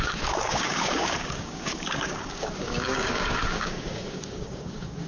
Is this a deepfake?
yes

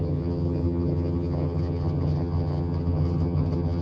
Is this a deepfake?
yes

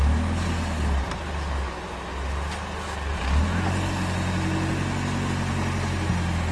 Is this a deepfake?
no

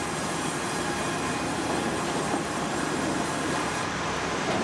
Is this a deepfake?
yes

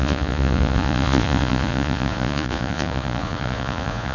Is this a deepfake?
yes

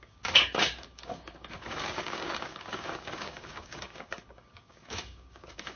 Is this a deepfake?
yes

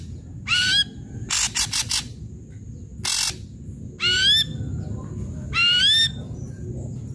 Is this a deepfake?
no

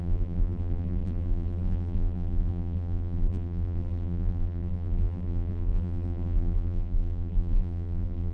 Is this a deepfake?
yes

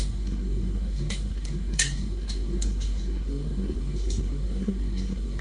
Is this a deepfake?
yes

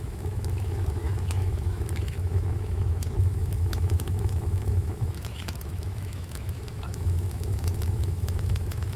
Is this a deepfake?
yes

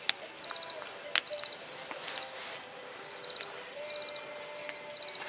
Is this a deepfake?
no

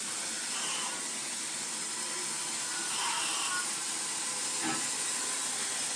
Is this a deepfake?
no